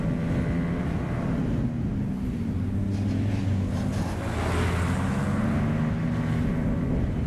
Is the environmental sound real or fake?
real